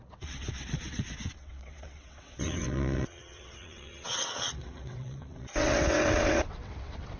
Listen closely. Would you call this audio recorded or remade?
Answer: remade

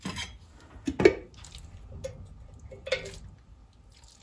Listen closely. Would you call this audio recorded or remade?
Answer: recorded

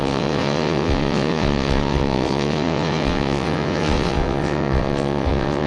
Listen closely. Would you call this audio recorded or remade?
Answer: remade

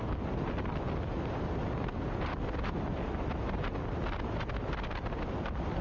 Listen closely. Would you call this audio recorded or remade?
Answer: recorded